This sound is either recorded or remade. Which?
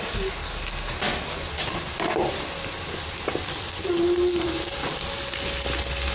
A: recorded